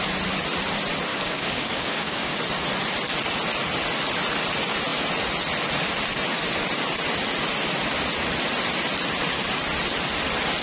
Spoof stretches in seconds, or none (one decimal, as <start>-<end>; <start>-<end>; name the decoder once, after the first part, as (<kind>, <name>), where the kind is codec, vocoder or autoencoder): 1.1-2.4 (codec, DAC)